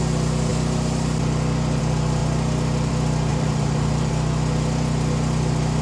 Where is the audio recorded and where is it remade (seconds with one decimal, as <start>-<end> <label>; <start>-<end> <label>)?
0.0-3.3 recorded; 3.3-4.1 remade; 4.1-5.8 recorded